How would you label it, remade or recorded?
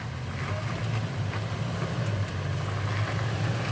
recorded